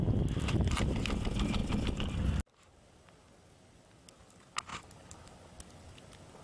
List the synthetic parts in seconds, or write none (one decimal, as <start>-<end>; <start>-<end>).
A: 4.7-5.2